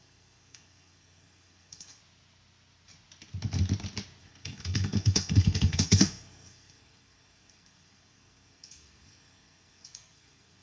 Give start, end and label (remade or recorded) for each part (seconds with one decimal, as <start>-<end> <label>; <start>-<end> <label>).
0.0-2.0 remade; 2.0-4.2 recorded; 4.2-10.6 remade